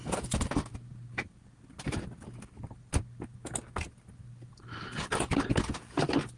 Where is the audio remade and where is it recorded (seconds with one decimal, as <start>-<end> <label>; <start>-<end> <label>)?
0.0-6.4 recorded